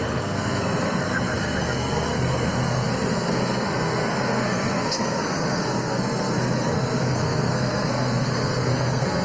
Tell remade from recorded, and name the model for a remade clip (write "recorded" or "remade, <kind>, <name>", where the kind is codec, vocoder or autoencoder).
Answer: remade, codec, SNAC